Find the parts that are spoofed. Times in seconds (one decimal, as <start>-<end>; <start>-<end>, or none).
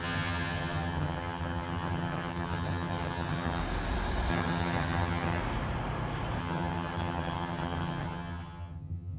0.0-3.6; 4.3-5.4; 6.4-9.2